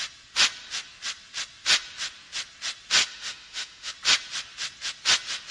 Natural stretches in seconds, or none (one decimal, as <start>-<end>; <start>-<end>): 0.0-3.0; 3.9-5.5